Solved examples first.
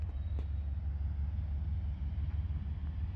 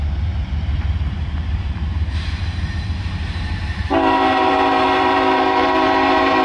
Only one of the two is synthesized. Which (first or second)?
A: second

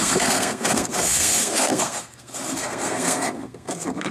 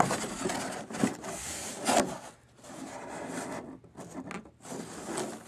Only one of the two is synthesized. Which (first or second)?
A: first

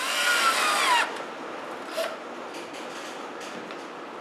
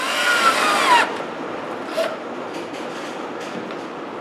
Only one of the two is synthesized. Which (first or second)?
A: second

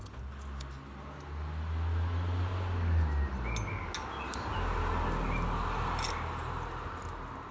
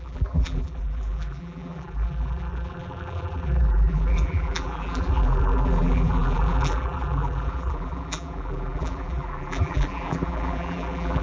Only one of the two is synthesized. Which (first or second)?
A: second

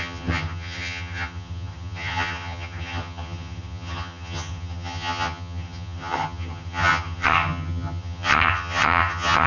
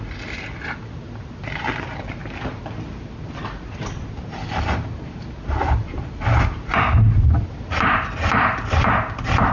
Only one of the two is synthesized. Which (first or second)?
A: first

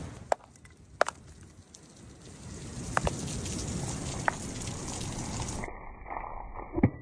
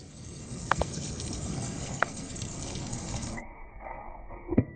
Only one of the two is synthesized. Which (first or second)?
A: second